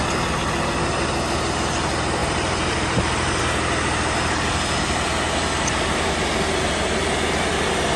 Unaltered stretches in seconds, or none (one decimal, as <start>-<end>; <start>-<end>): 0.0-2.2; 3.4-8.0